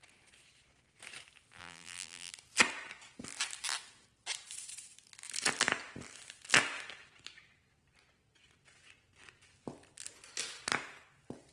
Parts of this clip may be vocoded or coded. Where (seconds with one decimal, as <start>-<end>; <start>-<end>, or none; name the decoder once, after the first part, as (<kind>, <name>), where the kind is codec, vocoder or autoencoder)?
1.6-2.3 (vocoder, BigVGAN v2)